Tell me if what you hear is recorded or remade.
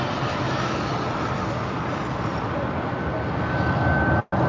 recorded